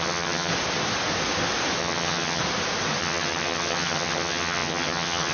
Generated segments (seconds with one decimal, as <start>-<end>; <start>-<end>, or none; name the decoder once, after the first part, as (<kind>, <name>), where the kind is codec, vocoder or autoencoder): 0.0-0.5 (vocoder, HiFi-GAN); 1.8-2.4; 3.0-5.3